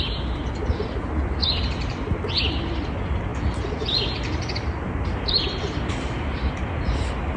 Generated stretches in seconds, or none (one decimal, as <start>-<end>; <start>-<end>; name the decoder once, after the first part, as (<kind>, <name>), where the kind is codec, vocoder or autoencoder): none